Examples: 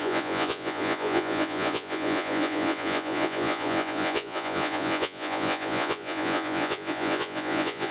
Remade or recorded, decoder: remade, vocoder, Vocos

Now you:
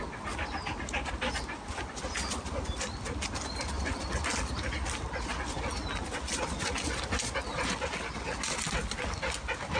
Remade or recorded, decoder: recorded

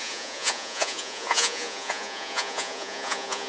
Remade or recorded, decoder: remade, vocoder, Vocos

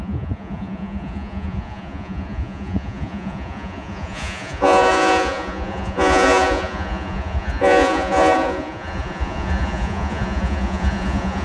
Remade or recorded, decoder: remade, vocoder, Vocos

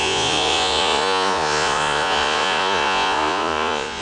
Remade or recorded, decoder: remade, vocoder, Vocos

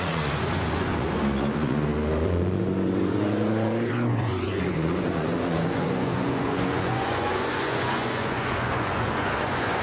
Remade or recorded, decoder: remade, vocoder, Vocos